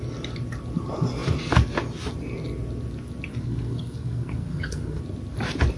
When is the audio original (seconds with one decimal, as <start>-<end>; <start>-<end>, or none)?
0.0-3.3; 5.0-5.8